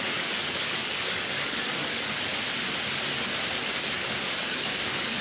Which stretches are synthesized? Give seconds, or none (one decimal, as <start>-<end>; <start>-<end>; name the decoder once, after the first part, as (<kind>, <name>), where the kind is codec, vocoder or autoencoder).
0.0-2.3 (codec, DAC); 3.6-5.2